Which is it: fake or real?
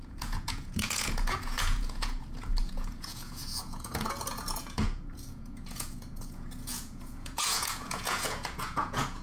fake